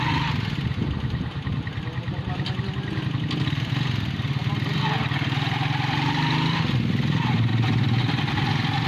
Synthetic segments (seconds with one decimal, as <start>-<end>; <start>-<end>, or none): none